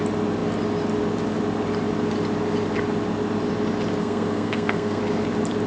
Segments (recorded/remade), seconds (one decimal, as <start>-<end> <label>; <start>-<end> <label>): 0.0-4.0 recorded; 4.0-5.0 remade; 5.0-5.7 recorded